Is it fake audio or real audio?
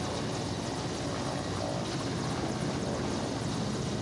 real